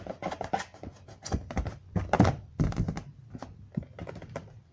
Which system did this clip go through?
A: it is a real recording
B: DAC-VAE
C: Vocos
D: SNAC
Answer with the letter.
A